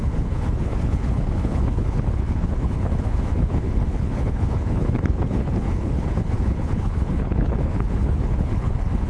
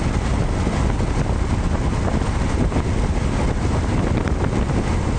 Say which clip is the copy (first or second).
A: first